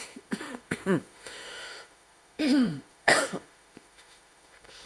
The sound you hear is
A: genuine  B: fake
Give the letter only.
B